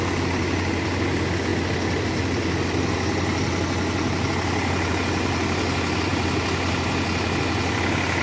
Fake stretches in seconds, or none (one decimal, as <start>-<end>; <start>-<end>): none